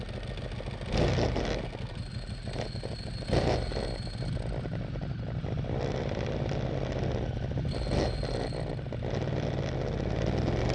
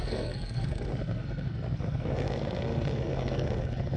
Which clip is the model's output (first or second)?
second